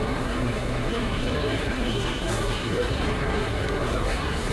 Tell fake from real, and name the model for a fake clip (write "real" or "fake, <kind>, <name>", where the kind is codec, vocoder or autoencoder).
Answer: fake, codec, SNAC